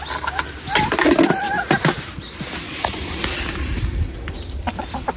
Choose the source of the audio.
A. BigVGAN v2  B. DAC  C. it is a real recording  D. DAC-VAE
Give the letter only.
C